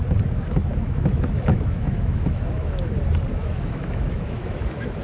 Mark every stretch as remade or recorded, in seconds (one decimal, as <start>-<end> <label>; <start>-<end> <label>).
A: 0.0-0.7 recorded; 0.7-2.9 remade; 2.9-3.3 recorded; 3.3-5.0 remade